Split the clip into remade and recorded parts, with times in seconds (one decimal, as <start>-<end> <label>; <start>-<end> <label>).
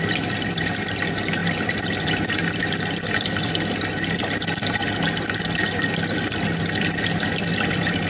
0.0-4.8 remade; 4.8-7.5 recorded; 7.5-8.1 remade